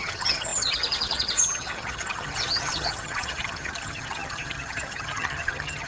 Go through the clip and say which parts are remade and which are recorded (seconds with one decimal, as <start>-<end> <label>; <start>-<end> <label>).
0.0-5.9 remade

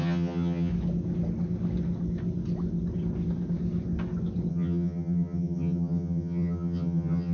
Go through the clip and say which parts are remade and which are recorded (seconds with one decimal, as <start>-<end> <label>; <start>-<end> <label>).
0.0-0.7 remade; 0.7-4.5 recorded; 4.5-7.3 remade

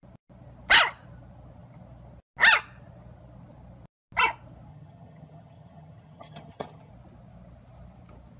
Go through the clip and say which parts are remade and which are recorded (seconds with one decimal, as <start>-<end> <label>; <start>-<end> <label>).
0.0-4.7 recorded; 4.7-6.9 remade; 6.9-8.4 recorded

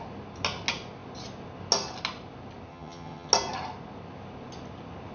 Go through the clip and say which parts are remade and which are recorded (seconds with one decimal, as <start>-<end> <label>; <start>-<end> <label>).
0.0-2.7 recorded; 2.7-3.3 remade; 3.3-5.1 recorded

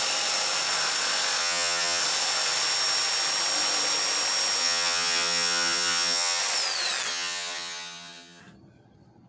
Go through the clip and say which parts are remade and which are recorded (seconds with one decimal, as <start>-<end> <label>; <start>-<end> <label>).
0.0-1.4 recorded; 1.4-2.0 remade; 2.0-4.6 recorded; 4.6-6.4 remade; 6.4-7.1 recorded; 7.1-8.4 remade; 8.4-9.3 recorded

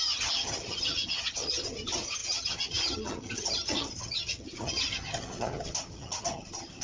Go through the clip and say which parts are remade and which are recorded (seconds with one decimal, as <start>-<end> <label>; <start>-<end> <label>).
0.0-6.8 remade

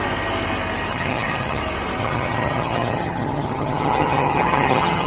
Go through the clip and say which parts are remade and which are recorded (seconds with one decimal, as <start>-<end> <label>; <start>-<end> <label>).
0.0-0.9 recorded; 0.9-1.6 remade; 1.6-2.0 recorded; 2.0-5.1 remade